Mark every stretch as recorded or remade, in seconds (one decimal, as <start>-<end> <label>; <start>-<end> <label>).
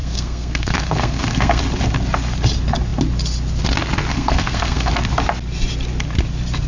0.0-1.6 remade; 1.6-4.1 recorded; 4.1-4.9 remade; 4.9-6.7 recorded